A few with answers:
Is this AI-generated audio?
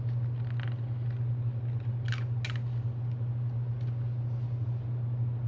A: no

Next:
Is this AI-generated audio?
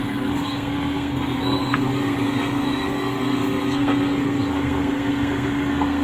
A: yes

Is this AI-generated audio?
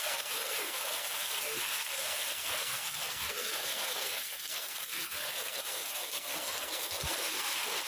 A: yes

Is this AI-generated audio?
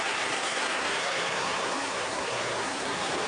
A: yes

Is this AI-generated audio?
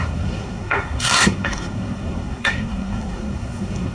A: yes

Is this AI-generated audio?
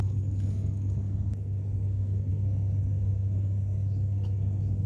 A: yes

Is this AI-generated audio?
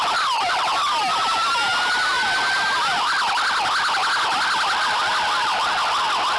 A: no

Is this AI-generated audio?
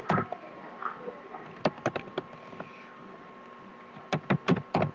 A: no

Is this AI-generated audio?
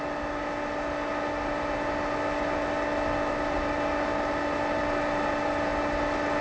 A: no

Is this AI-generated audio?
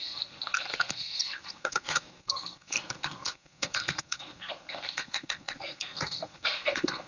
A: yes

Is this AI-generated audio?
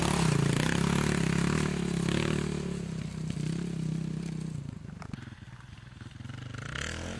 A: no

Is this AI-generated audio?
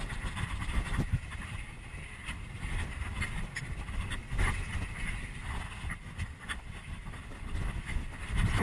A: no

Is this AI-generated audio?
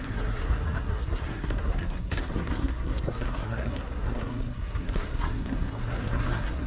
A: yes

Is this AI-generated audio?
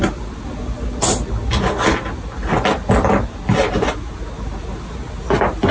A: no